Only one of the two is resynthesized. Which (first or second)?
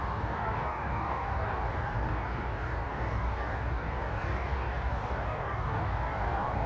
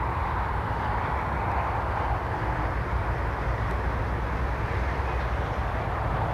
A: first